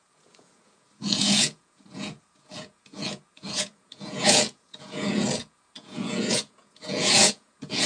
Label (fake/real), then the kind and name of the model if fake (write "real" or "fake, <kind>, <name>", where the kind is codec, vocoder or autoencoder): fake, vocoder, Vocos